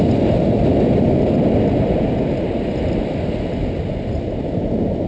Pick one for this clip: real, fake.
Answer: real